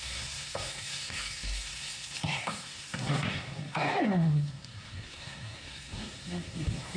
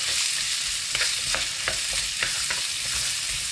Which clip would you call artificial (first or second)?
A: first